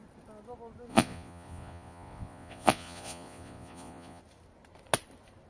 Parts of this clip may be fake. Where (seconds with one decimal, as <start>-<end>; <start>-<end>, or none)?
0.9-4.2